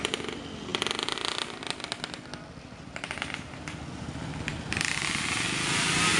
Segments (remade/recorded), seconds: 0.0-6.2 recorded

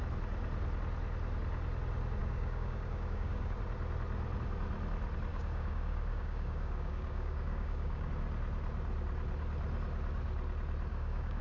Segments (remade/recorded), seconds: 0.0-2.2 recorded; 2.2-3.6 remade; 3.6-5.3 recorded; 5.3-8.1 remade; 8.1-10.9 recorded; 10.9-11.4 remade

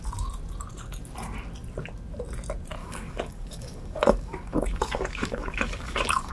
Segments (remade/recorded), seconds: 0.0-2.8 recorded; 2.8-6.3 remade

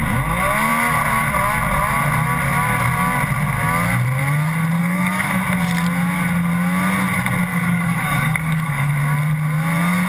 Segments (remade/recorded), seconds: 0.0-4.8 recorded; 4.8-5.4 remade; 5.4-7.5 recorded; 7.5-8.9 remade; 8.9-10.1 recorded

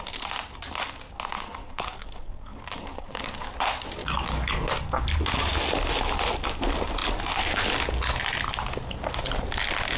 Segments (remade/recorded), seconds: 0.0-1.3 recorded; 1.3-3.5 remade; 3.5-4.0 recorded; 4.0-4.8 remade; 4.8-10.0 recorded

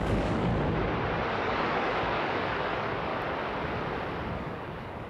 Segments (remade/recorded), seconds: 0.0-0.5 remade; 0.5-1.3 recorded; 1.3-3.1 remade; 3.1-4.3 recorded; 4.3-5.1 remade

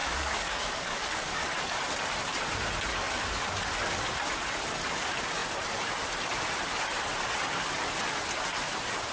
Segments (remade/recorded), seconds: 0.0-1.4 remade; 1.4-2.9 recorded; 2.9-3.4 remade; 3.4-9.1 recorded